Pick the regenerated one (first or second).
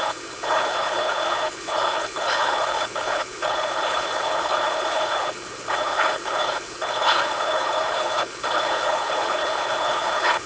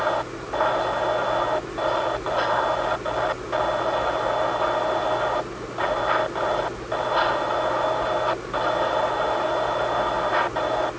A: first